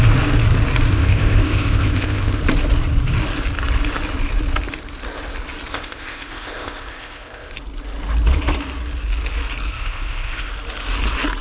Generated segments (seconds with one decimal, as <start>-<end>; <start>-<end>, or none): 0.9-2.4; 5.7-7.5; 9.7-10.5